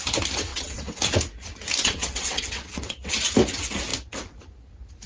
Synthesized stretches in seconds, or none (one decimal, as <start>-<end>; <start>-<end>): 0.5-1.0; 1.8-3.1